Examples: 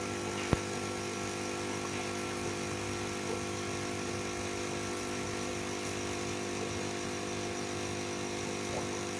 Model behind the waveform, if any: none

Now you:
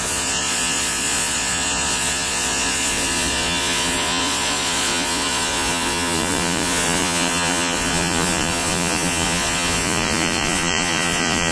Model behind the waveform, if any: vocoder, Vocos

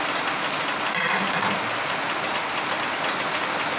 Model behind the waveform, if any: none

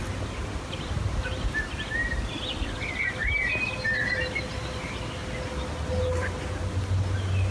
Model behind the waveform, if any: none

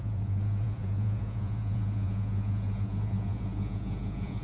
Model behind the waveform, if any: vocoder, Vocos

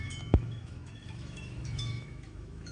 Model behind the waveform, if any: autoencoder, DAC-VAE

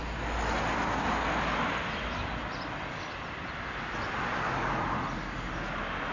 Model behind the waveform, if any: none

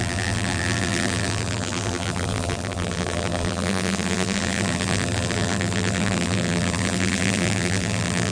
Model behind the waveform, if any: vocoder, BigVGAN v2